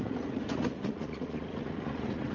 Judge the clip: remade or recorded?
remade